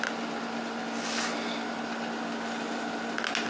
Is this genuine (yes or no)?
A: yes